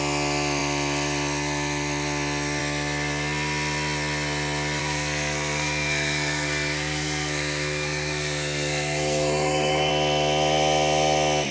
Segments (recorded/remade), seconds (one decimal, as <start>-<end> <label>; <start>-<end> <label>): 0.0-4.8 recorded; 4.8-9.9 remade; 9.9-11.5 recorded

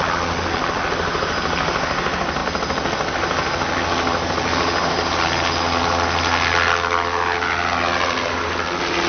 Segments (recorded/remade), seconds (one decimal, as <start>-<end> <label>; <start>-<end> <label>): 0.0-9.1 recorded

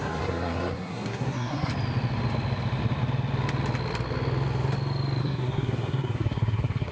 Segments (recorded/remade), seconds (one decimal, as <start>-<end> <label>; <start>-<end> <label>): 0.0-1.7 remade; 1.7-5.2 recorded; 5.2-6.9 remade

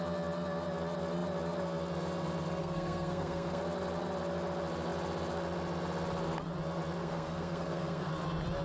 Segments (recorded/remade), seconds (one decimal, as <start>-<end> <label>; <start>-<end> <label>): 0.0-2.6 recorded; 2.6-3.6 remade; 3.6-7.0 recorded; 7.0-8.1 remade; 8.1-8.6 recorded